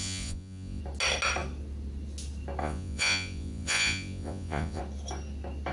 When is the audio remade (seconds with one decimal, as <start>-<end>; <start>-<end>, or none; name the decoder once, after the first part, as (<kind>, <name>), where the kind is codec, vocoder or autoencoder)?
0.0-0.8 (vocoder, Vocos); 2.6-4.8